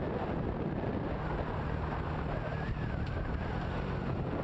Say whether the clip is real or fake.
real